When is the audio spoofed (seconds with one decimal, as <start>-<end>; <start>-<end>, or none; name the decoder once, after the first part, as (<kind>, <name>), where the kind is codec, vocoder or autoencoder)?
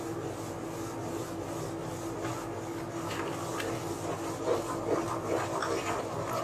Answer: none